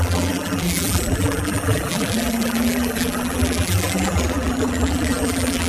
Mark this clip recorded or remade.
remade